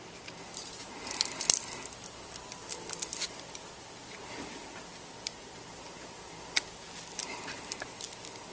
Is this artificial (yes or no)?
no